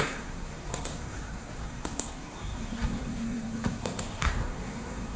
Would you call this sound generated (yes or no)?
yes